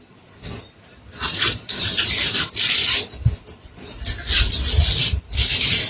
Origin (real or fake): real